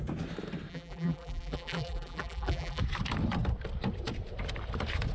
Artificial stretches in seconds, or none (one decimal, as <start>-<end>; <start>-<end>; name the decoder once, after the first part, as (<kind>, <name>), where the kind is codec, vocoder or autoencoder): 0.7-2.8 (vocoder, BigVGAN v2)